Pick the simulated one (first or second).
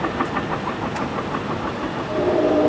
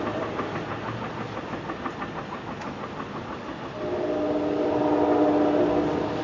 first